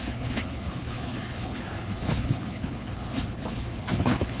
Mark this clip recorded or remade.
remade